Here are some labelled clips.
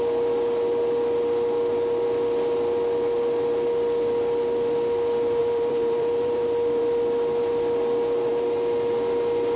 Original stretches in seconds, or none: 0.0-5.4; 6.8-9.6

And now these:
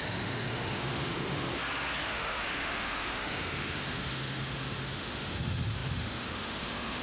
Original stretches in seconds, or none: 1.5-2.0

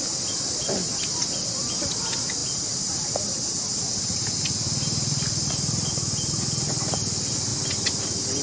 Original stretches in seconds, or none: 0.0-8.4

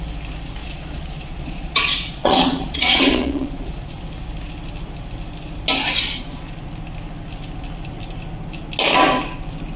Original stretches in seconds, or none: 0.0-0.6; 4.0-9.8

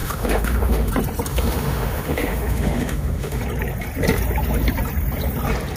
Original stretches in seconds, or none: 0.9-1.3; 3.4-5.8

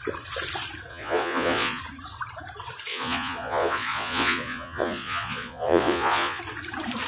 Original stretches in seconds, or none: 0.0-0.9; 1.8-2.9; 6.4-7.1